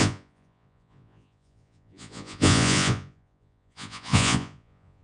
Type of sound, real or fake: fake